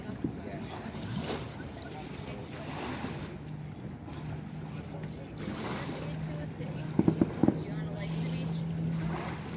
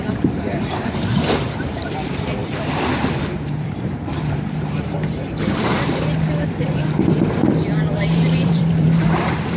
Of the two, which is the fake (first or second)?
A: second